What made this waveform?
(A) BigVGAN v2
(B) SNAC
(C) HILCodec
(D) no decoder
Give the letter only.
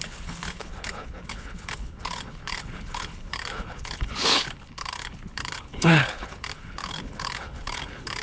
C